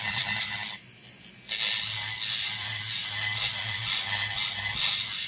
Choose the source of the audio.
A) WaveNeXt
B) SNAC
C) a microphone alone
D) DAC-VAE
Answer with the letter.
C